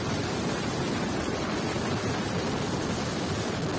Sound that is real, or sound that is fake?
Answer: real